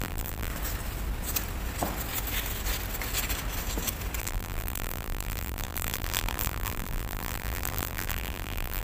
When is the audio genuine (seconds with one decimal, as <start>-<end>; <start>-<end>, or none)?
0.5-4.2